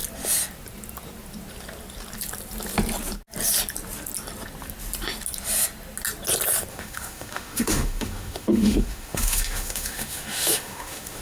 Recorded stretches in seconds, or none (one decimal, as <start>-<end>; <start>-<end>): 0.0-6.7